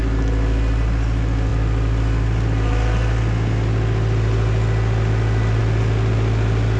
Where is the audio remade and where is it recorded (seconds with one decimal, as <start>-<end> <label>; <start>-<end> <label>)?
0.0-6.8 recorded